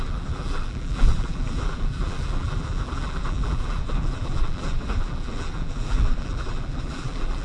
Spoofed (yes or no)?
yes